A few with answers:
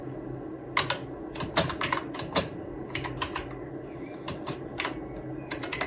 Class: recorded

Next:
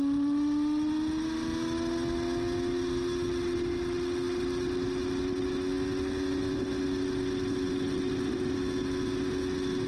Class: recorded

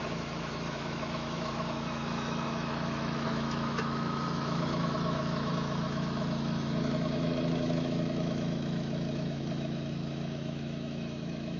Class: remade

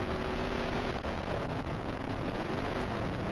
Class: remade